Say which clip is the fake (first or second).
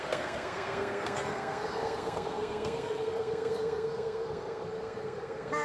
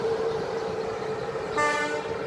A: first